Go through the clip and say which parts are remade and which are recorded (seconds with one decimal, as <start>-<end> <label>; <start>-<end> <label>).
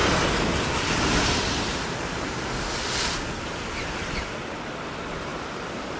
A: 0.0-6.0 recorded